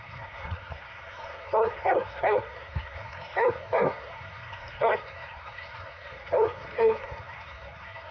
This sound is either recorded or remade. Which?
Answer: remade